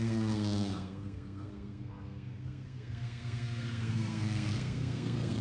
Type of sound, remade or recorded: remade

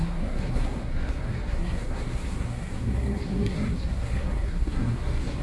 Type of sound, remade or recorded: remade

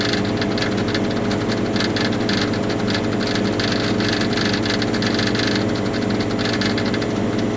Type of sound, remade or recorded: recorded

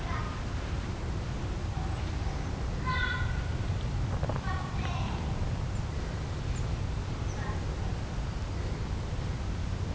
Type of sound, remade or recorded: recorded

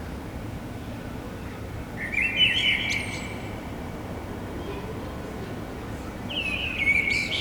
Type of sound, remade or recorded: recorded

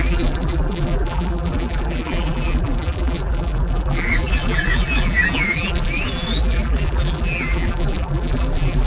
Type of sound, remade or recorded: remade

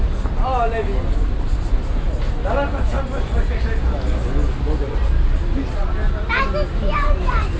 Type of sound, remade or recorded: recorded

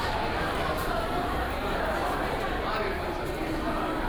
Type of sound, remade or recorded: remade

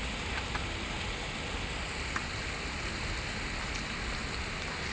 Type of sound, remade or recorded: recorded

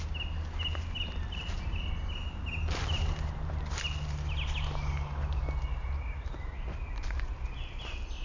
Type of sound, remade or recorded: recorded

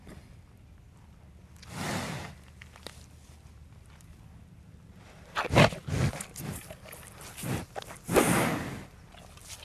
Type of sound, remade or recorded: recorded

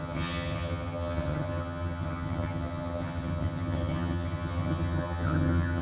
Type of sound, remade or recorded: remade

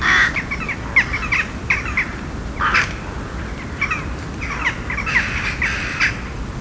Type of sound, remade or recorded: recorded